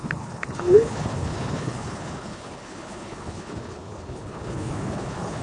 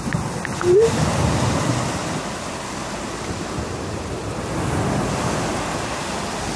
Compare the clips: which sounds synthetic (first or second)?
first